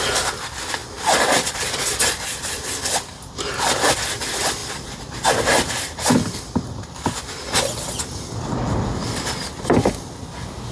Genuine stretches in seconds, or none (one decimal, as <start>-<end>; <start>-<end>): 0.0-10.7